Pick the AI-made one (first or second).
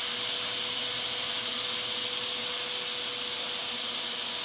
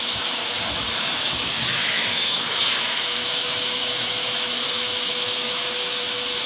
second